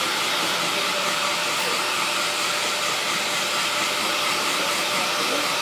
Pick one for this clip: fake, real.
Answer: real